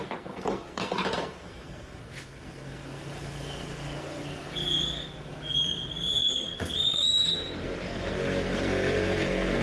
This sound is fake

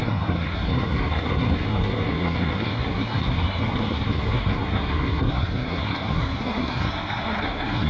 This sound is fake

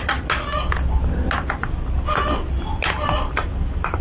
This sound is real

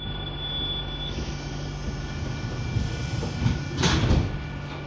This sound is real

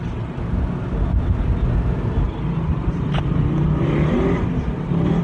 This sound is real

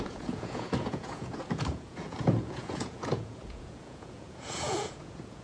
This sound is fake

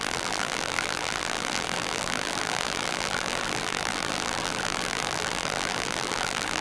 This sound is fake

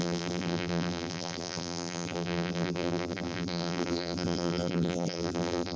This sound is fake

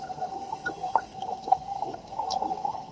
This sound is fake